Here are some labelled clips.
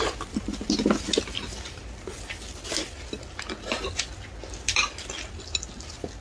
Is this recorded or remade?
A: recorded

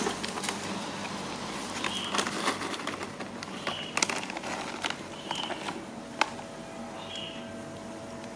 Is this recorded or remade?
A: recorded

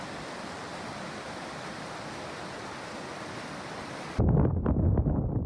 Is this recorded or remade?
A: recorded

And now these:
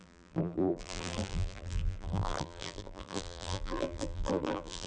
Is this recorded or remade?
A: remade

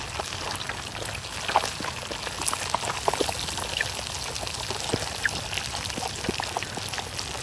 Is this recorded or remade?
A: recorded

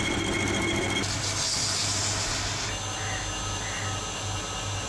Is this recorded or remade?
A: recorded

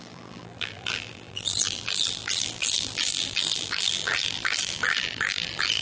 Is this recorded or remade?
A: remade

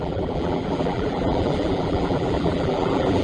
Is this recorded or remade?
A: remade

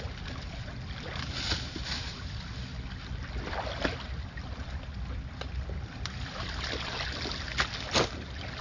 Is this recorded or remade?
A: recorded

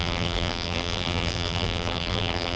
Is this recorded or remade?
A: remade